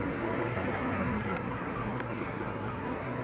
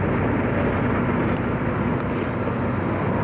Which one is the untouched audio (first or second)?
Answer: second